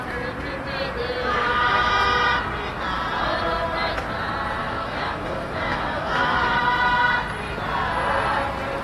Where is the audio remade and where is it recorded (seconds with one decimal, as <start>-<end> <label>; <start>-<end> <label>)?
0.0-1.4 recorded; 1.4-1.9 remade; 1.9-4.6 recorded; 4.6-6.6 remade; 6.6-8.8 recorded